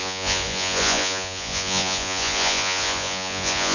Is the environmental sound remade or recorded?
remade